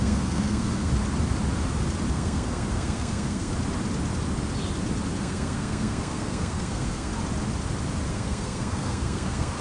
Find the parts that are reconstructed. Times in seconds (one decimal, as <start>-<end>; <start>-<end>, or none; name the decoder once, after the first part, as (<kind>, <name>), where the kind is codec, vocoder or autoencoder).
0.0-0.9 (codec, SNAC); 2.1-3.5; 5.2-7.1; 8.1-9.6